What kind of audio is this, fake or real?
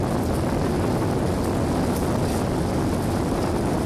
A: real